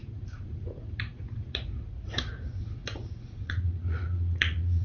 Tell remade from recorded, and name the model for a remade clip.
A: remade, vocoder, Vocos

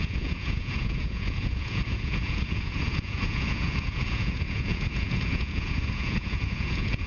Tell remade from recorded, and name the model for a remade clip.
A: remade, vocoder, Vocos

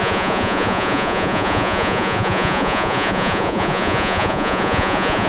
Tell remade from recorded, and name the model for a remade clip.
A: remade, vocoder, Vocos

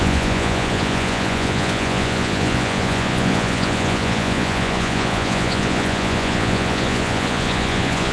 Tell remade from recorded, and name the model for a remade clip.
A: remade, vocoder, Vocos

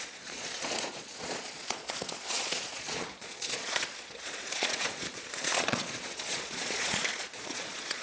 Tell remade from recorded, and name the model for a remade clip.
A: remade, vocoder, Vocos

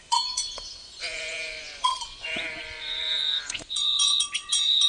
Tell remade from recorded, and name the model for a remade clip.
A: remade, vocoder, Vocos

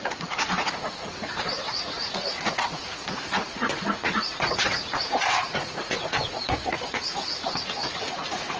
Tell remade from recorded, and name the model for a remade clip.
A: remade, vocoder, Vocos